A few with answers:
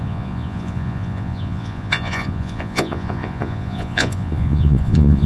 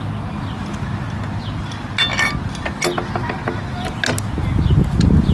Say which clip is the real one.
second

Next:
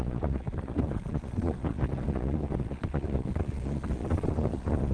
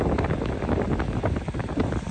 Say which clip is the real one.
second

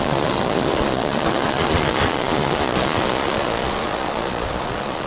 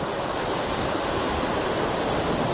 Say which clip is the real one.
second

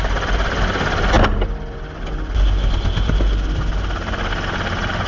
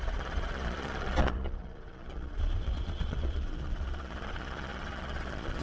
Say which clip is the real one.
first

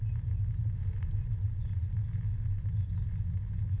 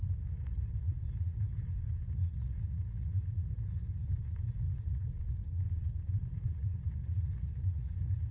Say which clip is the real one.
first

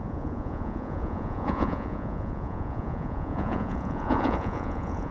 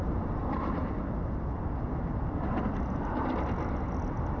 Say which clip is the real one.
second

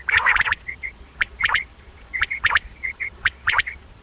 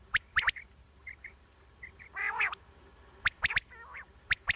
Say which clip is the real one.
second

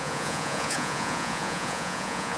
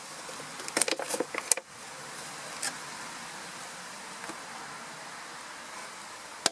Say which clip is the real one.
second